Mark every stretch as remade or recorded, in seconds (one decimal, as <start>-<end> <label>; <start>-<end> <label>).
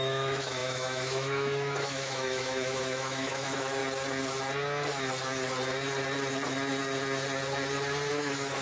0.0-3.8 remade; 3.8-8.1 recorded; 8.1-8.6 remade